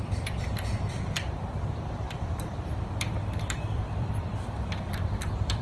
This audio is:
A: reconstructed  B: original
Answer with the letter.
A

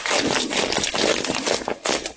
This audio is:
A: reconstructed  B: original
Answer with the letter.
B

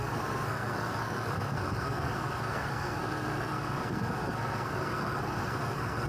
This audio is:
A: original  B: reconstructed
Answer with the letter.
B